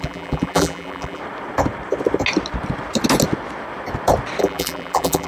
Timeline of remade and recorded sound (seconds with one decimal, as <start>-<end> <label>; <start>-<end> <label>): 0.0-1.2 remade; 1.2-4.4 recorded; 4.4-5.3 remade